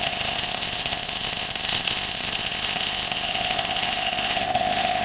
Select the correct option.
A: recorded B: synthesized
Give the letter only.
B